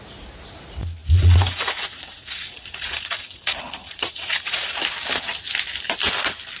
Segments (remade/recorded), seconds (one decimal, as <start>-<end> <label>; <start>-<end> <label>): 0.0-1.0 recorded; 1.0-4.7 remade; 4.7-6.6 recorded